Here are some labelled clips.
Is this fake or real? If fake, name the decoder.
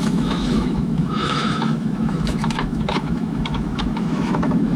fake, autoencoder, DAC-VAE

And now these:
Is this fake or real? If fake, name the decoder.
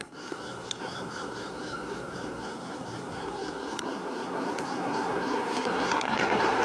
fake, codec, SNAC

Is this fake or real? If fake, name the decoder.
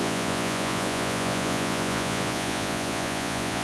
fake, vocoder, Vocos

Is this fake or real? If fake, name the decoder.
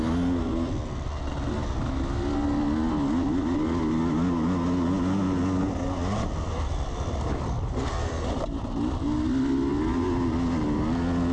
real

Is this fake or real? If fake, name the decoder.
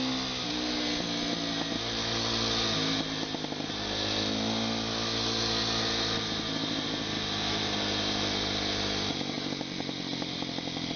real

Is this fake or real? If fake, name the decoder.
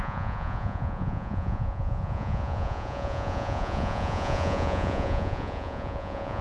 fake, vocoder, Vocos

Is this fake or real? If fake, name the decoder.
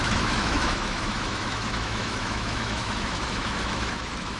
fake, autoencoder, DAC-VAE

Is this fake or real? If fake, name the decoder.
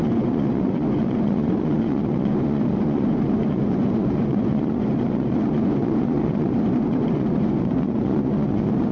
fake, vocoder, Vocos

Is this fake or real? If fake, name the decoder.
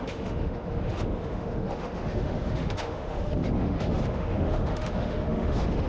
fake, autoencoder, DAC-VAE